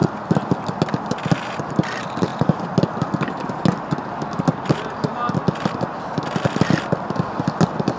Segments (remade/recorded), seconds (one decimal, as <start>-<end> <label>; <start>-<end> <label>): 0.0-8.0 recorded